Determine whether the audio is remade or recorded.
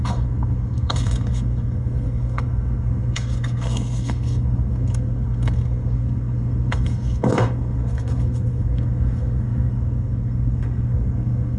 remade